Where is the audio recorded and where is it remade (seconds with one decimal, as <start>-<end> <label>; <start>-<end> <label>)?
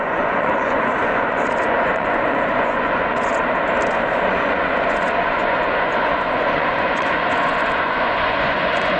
0.0-3.3 remade; 3.3-4.3 recorded; 4.3-9.0 remade